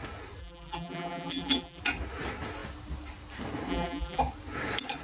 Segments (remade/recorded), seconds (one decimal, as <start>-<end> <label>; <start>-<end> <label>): 0.0-0.4 recorded; 0.4-1.8 remade; 1.8-3.7 recorded; 3.7-4.2 remade; 4.2-5.0 recorded